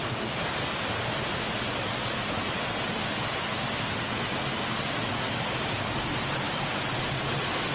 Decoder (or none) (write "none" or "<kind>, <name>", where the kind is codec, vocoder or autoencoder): none